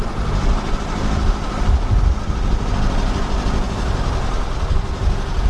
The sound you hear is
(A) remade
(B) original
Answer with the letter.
B